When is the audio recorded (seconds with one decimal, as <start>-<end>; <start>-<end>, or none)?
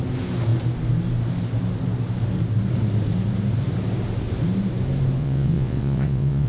0.0-5.2